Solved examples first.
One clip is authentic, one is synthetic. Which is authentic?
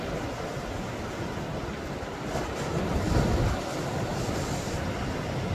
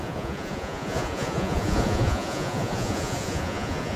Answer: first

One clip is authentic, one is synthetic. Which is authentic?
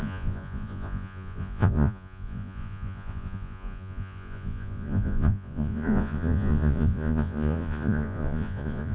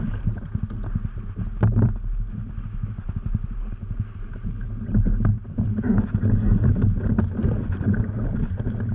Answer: second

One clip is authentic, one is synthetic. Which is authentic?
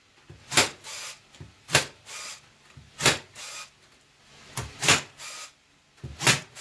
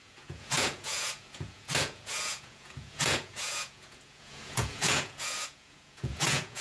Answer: first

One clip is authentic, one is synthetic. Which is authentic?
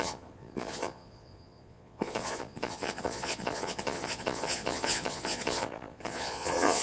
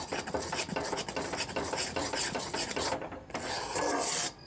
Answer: second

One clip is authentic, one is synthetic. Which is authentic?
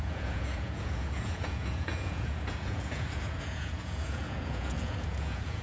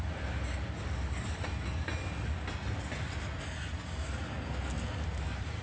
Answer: second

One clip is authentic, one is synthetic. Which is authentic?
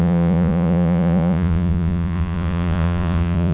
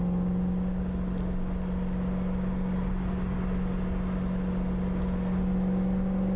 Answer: second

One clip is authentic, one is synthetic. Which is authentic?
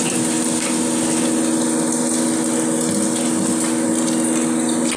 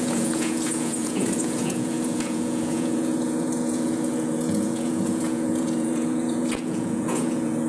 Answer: first